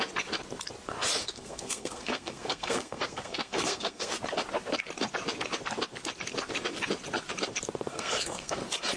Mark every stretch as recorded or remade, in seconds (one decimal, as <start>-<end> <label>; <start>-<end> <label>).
0.0-1.2 recorded; 1.2-4.1 remade; 4.1-7.9 recorded; 7.9-8.6 remade; 8.6-9.0 recorded